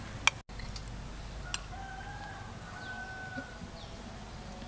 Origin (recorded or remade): recorded